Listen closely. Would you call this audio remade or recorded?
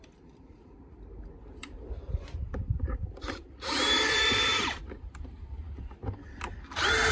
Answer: remade